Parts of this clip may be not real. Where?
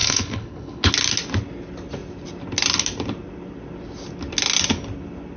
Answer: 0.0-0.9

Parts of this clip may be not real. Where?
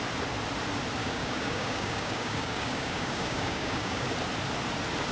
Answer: 1.0-4.1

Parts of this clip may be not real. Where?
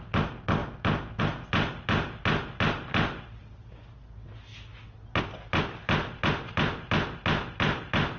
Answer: none